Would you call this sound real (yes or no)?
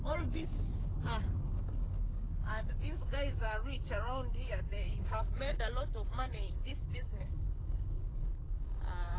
no